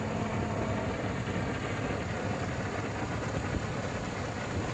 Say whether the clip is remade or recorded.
recorded